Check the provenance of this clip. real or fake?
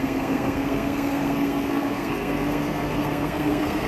fake